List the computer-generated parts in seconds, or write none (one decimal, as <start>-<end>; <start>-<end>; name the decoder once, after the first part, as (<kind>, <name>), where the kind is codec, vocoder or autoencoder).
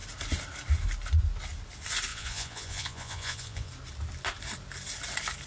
2.1-3.7 (vocoder, Vocos)